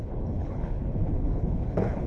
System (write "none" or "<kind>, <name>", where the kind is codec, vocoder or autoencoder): codec, HILCodec